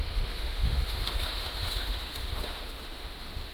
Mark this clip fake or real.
fake